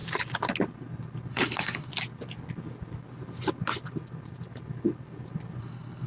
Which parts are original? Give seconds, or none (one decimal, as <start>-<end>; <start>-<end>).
0.0-1.3; 1.9-5.6